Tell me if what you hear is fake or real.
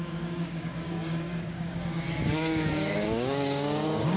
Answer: fake